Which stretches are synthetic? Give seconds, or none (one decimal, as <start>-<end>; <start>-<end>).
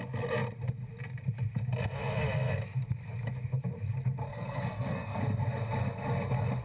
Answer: 4.3-5.2